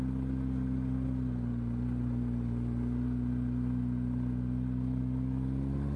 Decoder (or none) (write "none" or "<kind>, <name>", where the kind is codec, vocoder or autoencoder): none